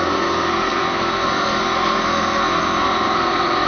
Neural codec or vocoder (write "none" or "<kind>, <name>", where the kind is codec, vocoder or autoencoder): codec, SNAC